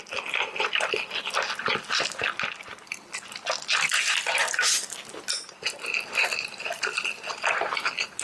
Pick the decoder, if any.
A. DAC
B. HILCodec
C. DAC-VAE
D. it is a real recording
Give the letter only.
D